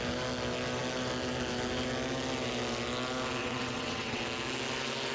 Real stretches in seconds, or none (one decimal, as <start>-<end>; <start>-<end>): 0.0-3.4; 4.2-5.1